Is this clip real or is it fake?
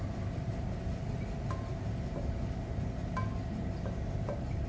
real